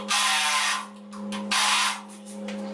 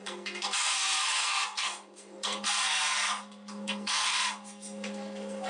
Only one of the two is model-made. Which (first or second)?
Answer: second